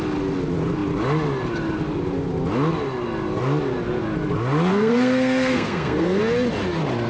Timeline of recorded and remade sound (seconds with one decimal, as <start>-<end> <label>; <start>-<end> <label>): 0.0-4.7 recorded; 4.7-6.2 remade; 6.2-7.1 recorded